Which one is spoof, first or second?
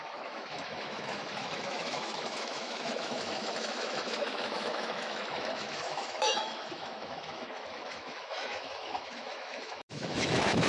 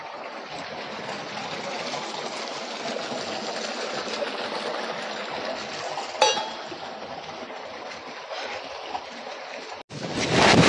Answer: first